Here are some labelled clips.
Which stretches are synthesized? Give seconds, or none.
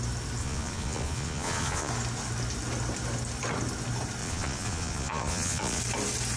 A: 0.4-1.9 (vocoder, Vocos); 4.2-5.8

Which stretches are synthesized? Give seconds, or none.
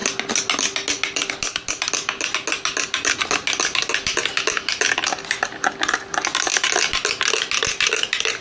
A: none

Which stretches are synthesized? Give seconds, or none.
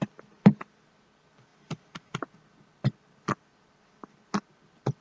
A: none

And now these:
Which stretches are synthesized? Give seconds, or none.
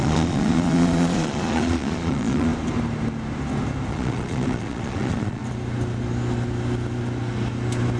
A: 0.0-2.5 (vocoder, Vocos); 3.9-5.4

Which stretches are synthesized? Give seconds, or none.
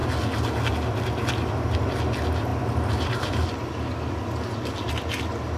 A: none